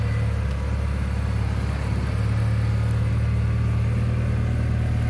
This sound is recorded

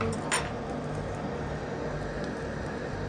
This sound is recorded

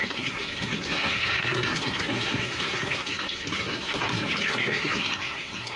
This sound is remade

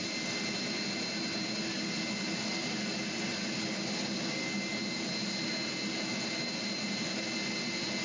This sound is recorded